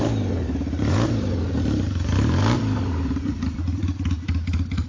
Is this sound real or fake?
fake